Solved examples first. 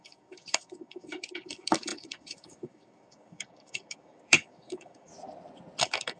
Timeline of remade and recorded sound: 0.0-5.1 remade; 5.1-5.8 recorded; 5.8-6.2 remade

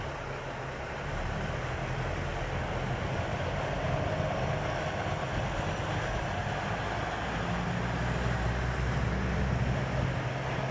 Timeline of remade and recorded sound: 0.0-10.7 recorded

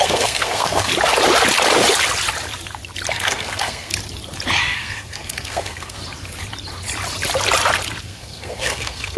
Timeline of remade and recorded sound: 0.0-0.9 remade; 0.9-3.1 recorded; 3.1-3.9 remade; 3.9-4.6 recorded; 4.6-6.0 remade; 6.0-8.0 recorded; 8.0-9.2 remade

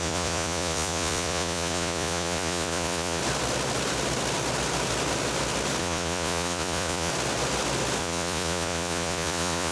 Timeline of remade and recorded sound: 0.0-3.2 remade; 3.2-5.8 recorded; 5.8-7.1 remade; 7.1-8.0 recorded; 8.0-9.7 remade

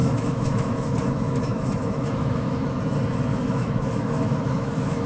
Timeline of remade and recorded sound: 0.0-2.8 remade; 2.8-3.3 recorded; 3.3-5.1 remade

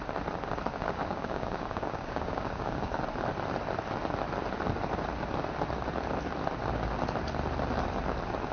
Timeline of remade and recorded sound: 0.0-0.7 recorded; 0.7-3.0 remade; 3.0-8.5 recorded

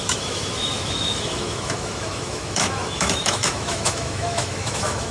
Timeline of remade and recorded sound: 0.0-5.1 remade

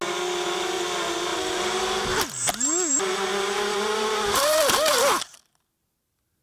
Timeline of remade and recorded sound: 0.0-1.3 recorded; 1.3-2.3 remade; 2.3-2.9 recorded; 2.9-4.6 remade; 4.6-6.4 recorded